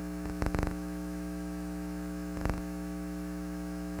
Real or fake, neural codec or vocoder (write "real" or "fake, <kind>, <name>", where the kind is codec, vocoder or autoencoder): fake, autoencoder, DAC-VAE